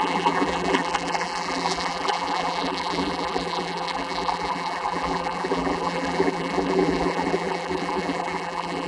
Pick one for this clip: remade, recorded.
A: remade